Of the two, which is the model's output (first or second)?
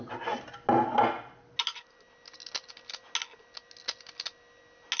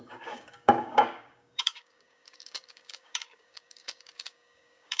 second